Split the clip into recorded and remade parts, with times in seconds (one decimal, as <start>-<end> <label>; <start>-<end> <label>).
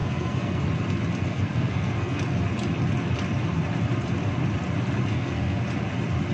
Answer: 0.0-0.6 remade; 0.6-1.2 recorded; 1.2-2.2 remade; 2.2-5.1 recorded; 5.1-5.6 remade; 5.6-6.3 recorded